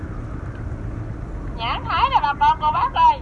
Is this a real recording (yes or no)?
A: yes